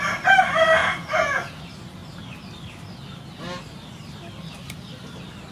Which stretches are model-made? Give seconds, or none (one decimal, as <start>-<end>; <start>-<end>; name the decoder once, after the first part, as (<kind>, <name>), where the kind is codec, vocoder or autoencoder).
0.8-1.6 (vocoder, Vocos)